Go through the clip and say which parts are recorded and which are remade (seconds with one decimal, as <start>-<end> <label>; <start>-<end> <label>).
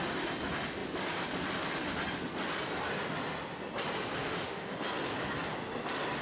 0.0-4.2 recorded; 4.2-4.8 remade; 4.8-6.2 recorded